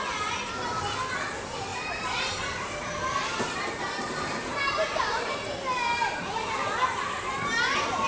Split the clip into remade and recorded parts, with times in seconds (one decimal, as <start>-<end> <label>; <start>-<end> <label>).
0.0-1.7 recorded; 1.7-5.4 remade; 5.4-8.1 recorded